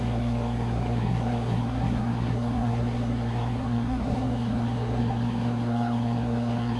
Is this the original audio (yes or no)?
no